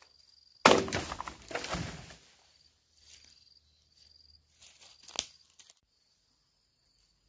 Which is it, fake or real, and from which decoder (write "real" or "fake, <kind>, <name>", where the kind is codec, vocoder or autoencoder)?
real